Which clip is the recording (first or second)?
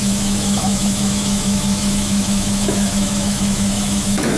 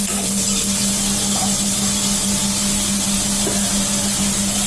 second